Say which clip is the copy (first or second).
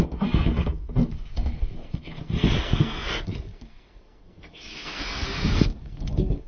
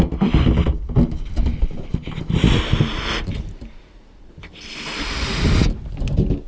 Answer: first